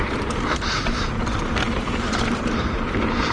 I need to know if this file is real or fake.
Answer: fake